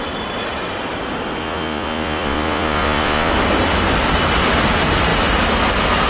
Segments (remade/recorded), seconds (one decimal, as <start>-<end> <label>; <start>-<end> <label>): 0.0-1.4 recorded; 1.4-3.3 remade; 3.3-6.1 recorded